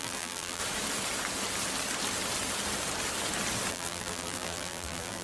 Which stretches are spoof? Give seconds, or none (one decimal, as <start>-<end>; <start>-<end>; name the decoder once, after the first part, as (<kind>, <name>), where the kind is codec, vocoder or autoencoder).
0.0-0.6 (vocoder, BigVGAN v2); 3.7-5.2